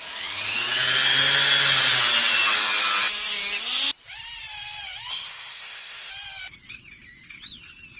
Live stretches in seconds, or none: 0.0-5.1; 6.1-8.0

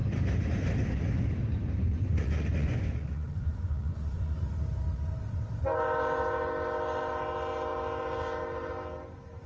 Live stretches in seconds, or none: 0.0-1.9; 4.4-9.5

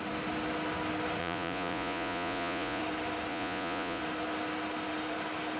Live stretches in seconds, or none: 0.0-1.2; 2.8-3.3; 4.0-5.6

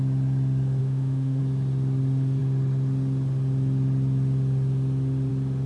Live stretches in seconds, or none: 0.0-0.8; 1.4-5.7

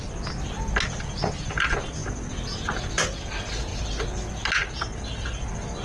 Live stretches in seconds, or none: 0.0-5.8

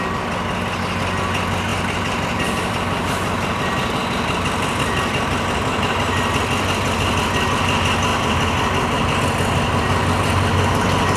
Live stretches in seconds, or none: 0.0-1.7; 7.0-8.1; 9.2-11.2

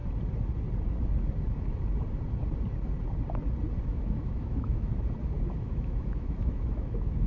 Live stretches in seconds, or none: 0.0-3.8; 4.9-5.5

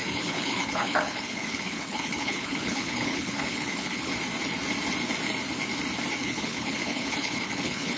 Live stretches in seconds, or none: 4.1-6.2